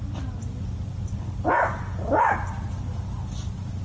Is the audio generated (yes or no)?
no